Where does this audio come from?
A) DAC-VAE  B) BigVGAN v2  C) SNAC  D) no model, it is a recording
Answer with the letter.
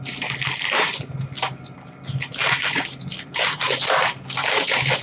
D